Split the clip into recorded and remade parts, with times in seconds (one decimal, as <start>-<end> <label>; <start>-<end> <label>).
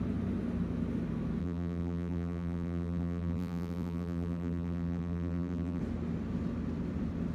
0.0-1.4 recorded; 1.4-5.8 remade; 5.8-7.3 recorded